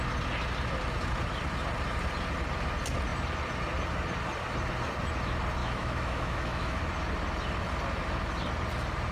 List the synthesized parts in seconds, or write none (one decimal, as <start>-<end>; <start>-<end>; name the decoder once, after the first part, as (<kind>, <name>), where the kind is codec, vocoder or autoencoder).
5.6-6.8 (autoencoder, DAC-VAE)